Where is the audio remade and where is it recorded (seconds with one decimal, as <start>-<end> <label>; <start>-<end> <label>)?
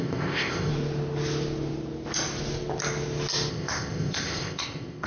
0.0-0.7 remade; 0.7-3.5 recorded; 3.5-5.1 remade